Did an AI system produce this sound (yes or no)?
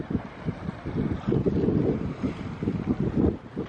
no